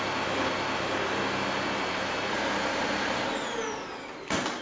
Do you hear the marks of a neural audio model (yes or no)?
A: no